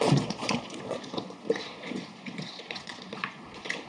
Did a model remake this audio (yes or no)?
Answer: yes